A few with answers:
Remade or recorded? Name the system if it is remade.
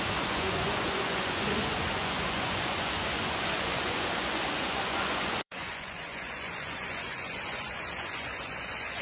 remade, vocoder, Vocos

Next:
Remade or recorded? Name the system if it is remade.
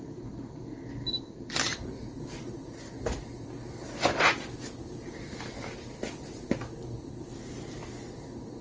recorded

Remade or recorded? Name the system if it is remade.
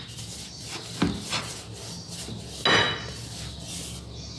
recorded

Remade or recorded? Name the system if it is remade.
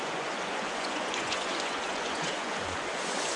remade, vocoder, Vocos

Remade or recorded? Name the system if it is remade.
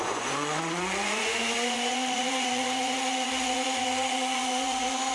remade, vocoder, Vocos